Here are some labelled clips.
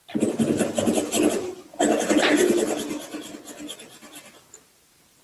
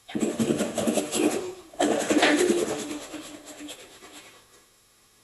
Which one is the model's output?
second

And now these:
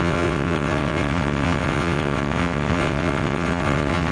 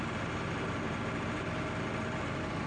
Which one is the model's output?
first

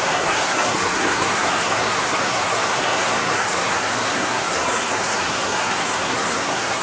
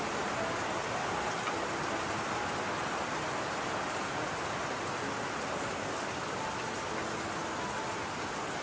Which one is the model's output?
first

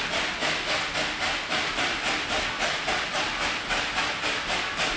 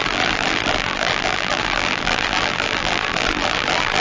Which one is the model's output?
second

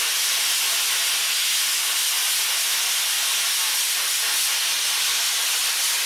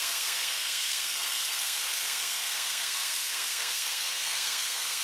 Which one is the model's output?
second